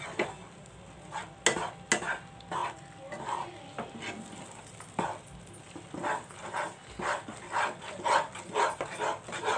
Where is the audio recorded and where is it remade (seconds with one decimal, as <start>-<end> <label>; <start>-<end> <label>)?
0.0-9.6 recorded